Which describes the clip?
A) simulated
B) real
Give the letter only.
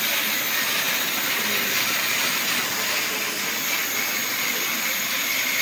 B